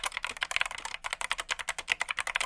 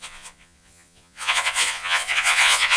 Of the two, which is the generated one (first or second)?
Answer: second